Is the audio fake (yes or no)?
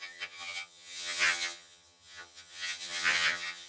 yes